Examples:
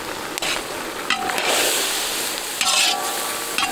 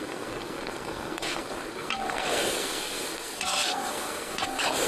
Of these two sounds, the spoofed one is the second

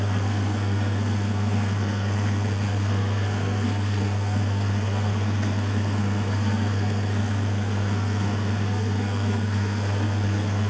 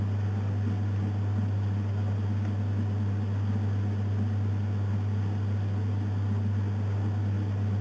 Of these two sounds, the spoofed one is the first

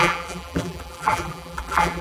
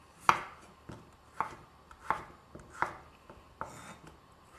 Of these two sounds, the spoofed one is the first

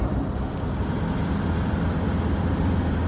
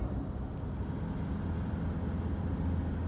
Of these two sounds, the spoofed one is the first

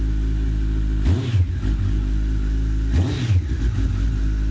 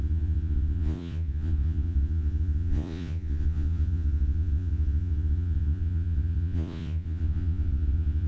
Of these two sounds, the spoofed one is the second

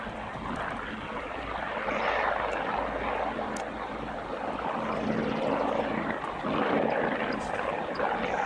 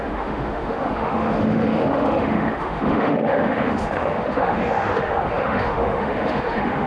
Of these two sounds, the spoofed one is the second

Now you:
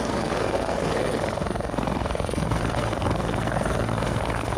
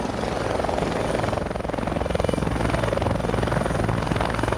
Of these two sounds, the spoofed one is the first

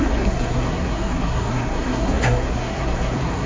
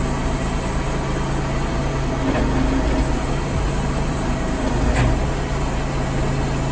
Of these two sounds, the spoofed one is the first